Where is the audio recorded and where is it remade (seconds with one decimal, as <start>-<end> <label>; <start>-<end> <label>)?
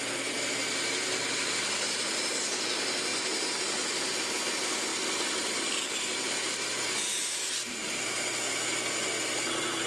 0.0-4.9 recorded; 4.9-8.1 remade; 8.1-9.9 recorded